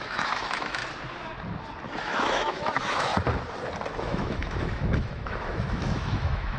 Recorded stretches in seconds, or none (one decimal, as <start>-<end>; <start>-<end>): 0.8-2.0; 3.1-4.0